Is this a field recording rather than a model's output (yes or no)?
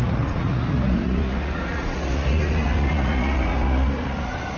no